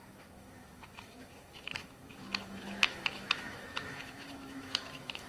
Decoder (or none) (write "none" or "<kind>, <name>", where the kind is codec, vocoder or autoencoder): autoencoder, DAC-VAE